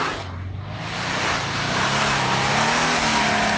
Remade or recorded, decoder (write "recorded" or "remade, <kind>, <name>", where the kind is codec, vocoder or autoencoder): recorded